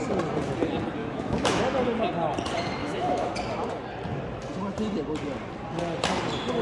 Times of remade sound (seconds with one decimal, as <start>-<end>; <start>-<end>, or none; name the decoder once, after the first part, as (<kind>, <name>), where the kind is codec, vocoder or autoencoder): 1.0-1.6 (autoencoder, DAC-VAE); 2.8-3.3